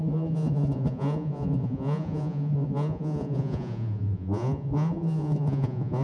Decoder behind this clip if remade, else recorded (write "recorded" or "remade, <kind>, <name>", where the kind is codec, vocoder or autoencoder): remade, vocoder, Vocos